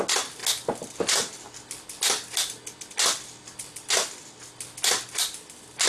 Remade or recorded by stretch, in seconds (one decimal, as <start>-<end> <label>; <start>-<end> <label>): 0.0-5.9 recorded